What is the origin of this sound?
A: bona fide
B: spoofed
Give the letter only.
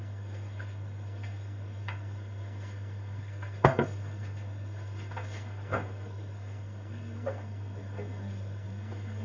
B